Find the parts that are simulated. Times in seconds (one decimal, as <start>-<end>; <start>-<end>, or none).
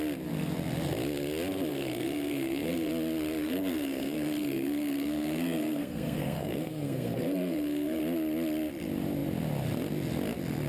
1.7-2.9; 3.4-8.0